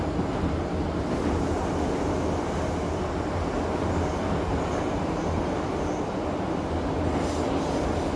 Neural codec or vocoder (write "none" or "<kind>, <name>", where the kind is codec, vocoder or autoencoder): none